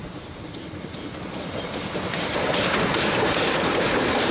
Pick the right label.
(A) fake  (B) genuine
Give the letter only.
A